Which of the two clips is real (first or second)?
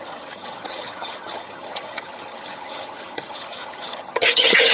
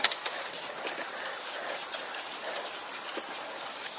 second